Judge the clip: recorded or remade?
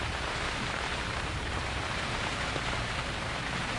remade